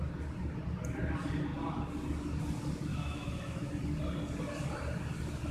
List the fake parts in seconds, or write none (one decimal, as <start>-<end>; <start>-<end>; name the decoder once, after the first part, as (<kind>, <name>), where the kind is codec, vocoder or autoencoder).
2.9-3.7 (autoencoder, DAC-VAE)

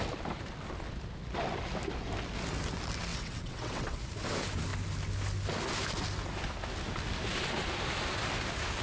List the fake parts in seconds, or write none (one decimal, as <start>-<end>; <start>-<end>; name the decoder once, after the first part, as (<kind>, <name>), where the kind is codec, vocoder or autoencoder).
3.1-4.0 (vocoder, WaveNeXt)

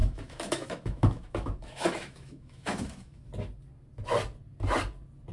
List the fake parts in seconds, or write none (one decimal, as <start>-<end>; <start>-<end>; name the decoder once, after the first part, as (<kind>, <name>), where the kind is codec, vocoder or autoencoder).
0.0-3.2 (autoencoder, DAC-VAE)

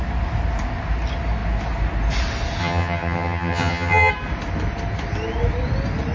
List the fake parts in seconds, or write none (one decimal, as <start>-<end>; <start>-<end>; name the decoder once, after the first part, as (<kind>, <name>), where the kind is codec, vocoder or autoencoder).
2.6-4.1 (vocoder, HiFi-GAN)

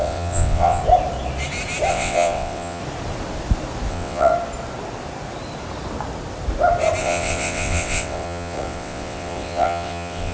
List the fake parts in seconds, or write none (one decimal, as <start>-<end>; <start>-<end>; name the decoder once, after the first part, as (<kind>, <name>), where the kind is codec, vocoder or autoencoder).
0.0-0.8 (vocoder, WaveNeXt); 1.9-2.8; 3.9-4.3; 7.0-10.3

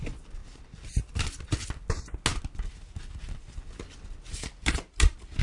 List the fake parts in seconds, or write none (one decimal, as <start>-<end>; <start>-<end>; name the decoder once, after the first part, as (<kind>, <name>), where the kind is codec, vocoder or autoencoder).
none

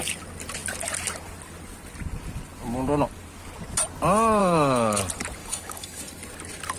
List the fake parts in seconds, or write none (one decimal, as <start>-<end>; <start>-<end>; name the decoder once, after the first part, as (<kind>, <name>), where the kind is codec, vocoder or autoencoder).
4.4-5.0 (codec, DAC); 5.4-6.0